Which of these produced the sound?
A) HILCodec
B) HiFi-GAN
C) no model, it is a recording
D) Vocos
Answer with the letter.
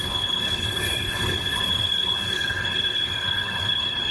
A